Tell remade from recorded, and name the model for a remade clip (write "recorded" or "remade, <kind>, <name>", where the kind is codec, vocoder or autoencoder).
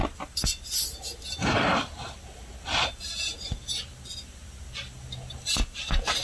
recorded